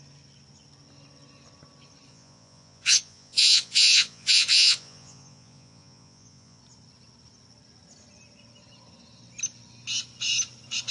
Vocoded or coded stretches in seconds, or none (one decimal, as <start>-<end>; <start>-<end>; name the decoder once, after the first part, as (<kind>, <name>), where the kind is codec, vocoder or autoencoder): 2.1-6.6 (vocoder, Vocos)